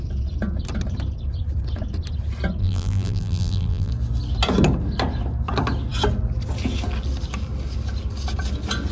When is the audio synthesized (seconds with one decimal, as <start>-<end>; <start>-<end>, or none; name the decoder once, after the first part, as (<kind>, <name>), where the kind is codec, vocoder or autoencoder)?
2.6-3.9 (vocoder, BigVGAN v2)